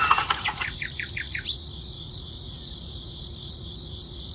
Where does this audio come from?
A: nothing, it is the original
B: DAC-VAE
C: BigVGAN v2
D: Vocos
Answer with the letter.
D